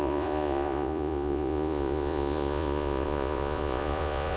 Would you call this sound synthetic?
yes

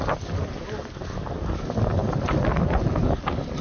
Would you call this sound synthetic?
no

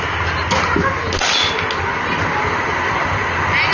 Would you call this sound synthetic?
no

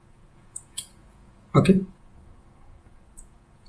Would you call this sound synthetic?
yes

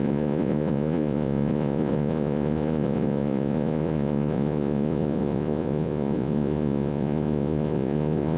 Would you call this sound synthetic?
yes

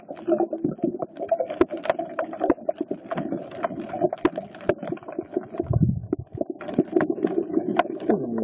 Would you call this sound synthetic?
no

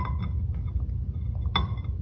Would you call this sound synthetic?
no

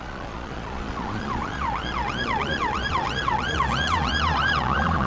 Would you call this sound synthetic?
yes